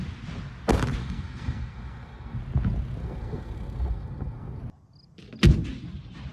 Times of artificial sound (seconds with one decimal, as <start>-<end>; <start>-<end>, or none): 1.0-2.4; 3.0-4.6